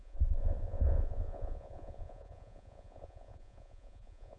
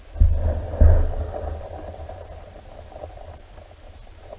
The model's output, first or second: first